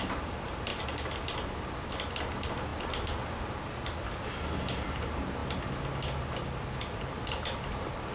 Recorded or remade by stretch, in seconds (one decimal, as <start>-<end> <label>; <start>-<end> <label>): 0.0-8.1 recorded